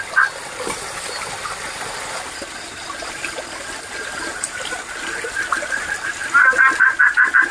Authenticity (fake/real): real